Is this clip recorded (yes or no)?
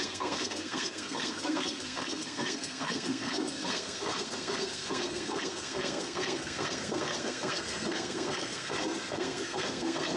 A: no